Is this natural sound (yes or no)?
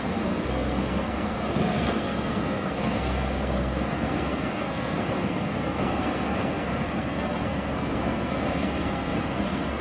no